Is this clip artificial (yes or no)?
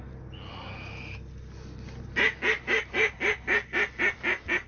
no